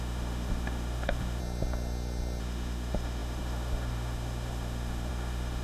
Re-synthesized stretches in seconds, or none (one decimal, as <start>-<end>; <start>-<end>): 0.0-1.4; 2.4-5.6